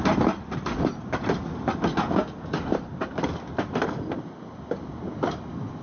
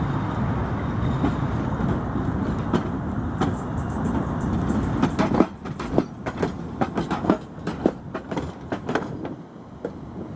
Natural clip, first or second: second